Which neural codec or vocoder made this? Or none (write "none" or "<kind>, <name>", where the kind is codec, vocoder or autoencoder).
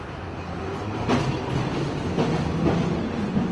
none